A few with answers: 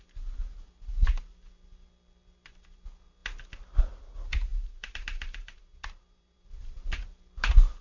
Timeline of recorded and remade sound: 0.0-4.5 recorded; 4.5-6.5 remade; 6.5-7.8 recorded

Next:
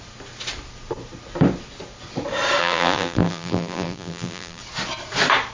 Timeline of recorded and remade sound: 0.0-2.6 recorded; 2.6-4.6 remade; 4.6-5.5 recorded